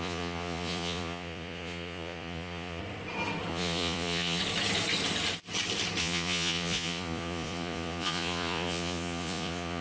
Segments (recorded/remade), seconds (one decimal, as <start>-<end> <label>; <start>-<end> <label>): 0.0-2.8 remade; 2.8-3.5 recorded; 3.5-4.4 remade; 4.4-6.0 recorded; 6.0-9.8 remade